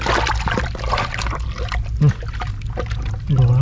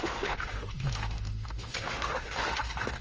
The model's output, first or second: second